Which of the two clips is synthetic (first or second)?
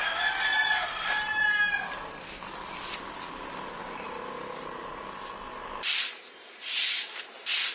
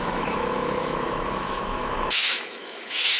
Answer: second